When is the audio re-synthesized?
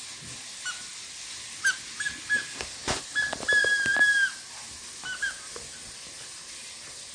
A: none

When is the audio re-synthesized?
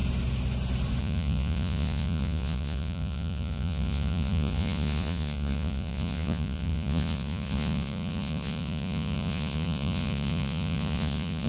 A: 1.0-11.5 (vocoder, Vocos)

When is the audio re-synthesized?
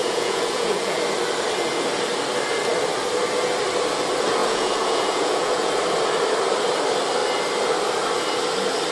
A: 0.0-1.0 (vocoder, Vocos); 4.4-5.7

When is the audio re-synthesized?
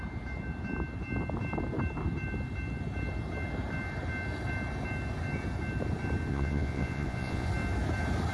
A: 6.3-7.5 (vocoder, Vocos)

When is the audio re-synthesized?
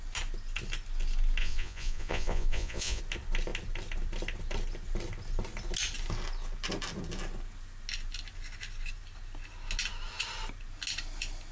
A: 1.4-3.0 (vocoder, Vocos)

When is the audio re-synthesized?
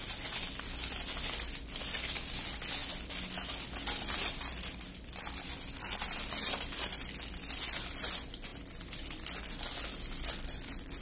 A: none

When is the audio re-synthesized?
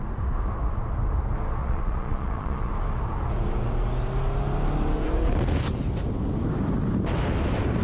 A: 1.6-2.7 (vocoder, Vocos)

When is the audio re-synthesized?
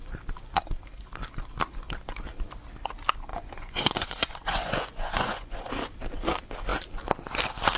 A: 3.3-5.7 (vocoder, Vocos)